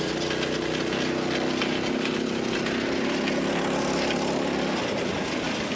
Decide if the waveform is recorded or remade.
recorded